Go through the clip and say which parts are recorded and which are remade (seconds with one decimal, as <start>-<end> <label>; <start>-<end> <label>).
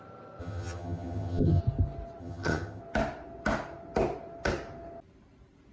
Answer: 0.0-0.4 recorded; 0.4-1.6 remade; 1.6-2.2 recorded; 2.2-2.8 remade; 2.8-5.7 recorded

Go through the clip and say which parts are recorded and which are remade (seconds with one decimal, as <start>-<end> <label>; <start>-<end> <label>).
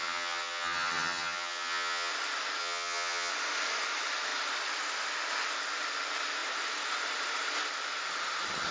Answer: 0.0-2.1 remade; 2.1-2.6 recorded; 2.6-3.3 remade; 3.3-8.7 recorded